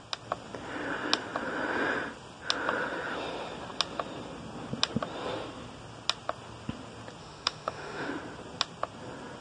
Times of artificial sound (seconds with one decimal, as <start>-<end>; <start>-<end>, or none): 7.2-8.1